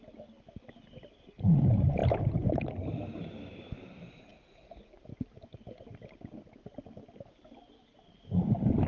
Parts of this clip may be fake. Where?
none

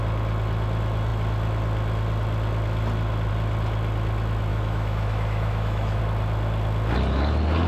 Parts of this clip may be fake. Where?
4.5-6.0

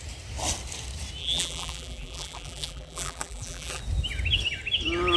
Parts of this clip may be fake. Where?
1.2-3.8